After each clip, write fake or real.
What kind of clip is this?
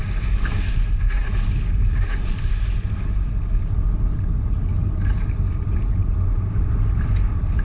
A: real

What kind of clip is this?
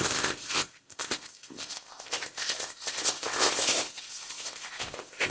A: fake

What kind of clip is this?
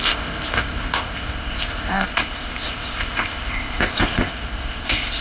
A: fake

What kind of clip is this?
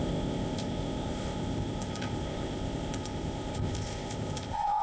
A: fake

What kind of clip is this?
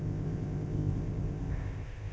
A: fake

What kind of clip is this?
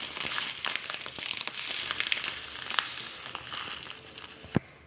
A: real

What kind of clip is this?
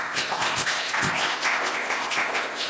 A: fake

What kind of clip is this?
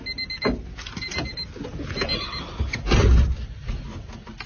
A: real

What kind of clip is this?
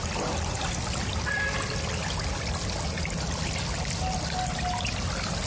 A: real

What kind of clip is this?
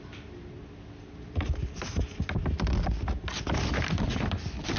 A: real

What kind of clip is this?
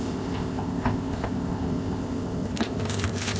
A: fake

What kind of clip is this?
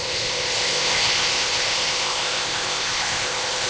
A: fake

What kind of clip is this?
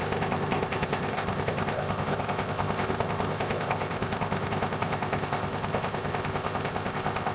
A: fake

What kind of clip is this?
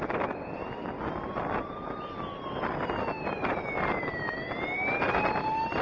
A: real